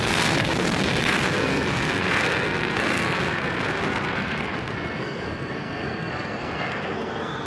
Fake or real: fake